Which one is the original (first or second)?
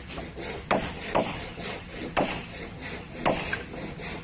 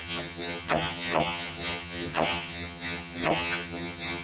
first